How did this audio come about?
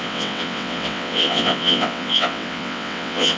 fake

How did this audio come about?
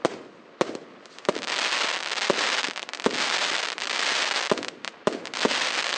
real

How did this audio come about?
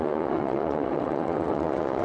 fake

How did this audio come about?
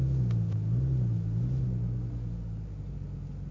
real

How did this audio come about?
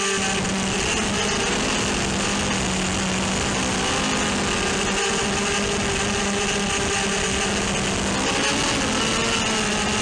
real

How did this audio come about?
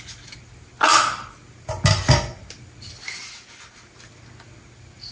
real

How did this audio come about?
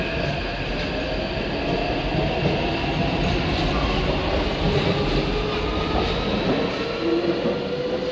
real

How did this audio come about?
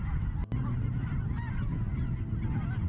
real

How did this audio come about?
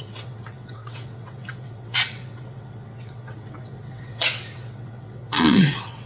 fake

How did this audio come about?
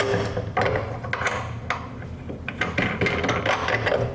real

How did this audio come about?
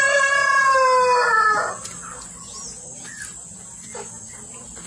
real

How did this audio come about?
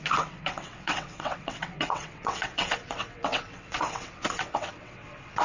fake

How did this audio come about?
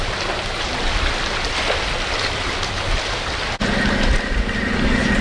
real